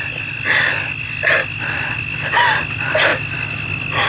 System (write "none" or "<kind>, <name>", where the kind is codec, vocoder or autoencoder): none